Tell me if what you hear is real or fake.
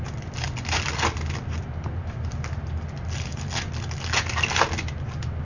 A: real